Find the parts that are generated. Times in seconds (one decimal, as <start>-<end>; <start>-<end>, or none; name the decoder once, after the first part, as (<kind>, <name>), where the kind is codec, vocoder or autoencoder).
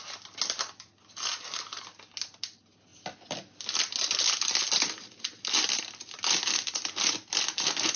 none